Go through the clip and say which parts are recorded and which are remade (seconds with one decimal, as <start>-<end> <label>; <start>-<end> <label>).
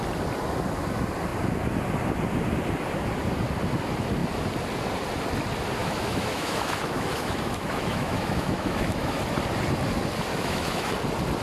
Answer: 0.0-5.8 recorded; 5.8-9.2 remade; 9.2-10.3 recorded; 10.3-10.9 remade; 10.9-11.4 recorded